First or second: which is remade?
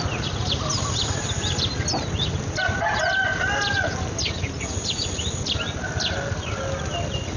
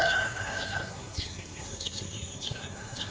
second